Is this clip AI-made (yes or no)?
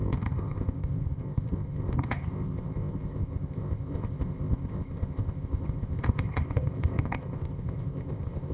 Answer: yes